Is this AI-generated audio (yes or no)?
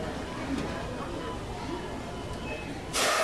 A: no